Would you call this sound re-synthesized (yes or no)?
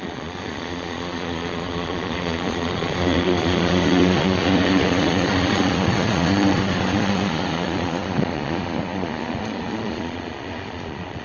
yes